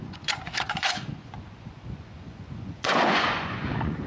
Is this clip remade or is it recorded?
remade